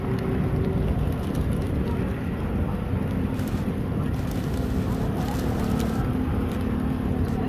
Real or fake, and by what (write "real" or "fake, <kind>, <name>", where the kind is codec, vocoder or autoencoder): real